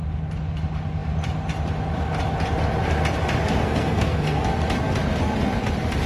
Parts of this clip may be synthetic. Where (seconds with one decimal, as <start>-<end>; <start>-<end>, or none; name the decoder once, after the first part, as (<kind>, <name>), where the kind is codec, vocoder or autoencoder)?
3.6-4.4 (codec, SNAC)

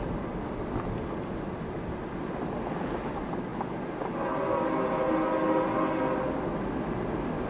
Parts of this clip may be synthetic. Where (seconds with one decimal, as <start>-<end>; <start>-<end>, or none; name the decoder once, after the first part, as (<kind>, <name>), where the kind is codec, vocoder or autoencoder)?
none

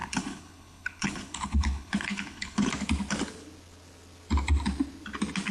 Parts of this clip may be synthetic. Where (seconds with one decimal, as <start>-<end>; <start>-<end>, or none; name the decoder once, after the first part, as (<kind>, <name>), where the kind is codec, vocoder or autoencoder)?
0.0-2.7 (codec, HILCodec)

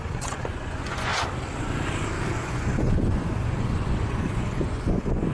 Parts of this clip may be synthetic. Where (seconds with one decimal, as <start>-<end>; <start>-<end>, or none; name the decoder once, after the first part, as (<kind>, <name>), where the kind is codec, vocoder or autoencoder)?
0.0-1.1 (vocoder, Vocos); 2.4-5.3

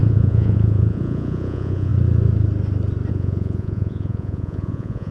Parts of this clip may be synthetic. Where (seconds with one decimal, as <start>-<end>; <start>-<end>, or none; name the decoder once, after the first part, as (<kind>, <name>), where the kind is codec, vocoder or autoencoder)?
0.0-1.9 (vocoder, Vocos); 3.1-5.1